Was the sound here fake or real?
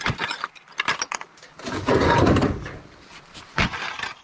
real